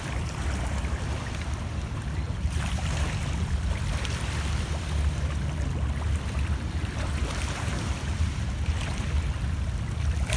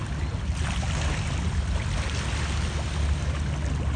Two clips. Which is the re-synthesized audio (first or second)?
first